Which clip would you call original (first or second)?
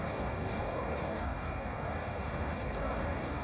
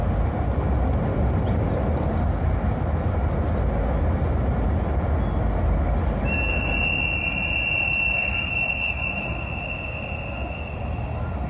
second